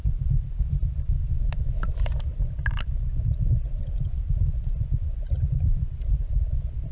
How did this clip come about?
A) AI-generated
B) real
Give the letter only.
B